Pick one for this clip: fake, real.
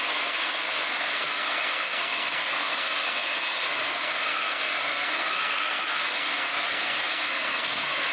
fake